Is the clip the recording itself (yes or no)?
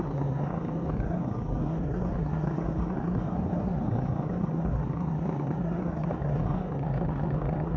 no